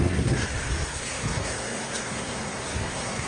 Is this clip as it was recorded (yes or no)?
no